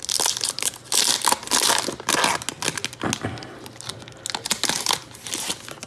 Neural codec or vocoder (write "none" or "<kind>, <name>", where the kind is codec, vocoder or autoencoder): none